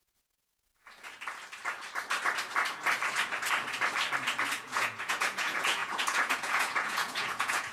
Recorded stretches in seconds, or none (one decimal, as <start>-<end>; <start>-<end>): 0.7-4.5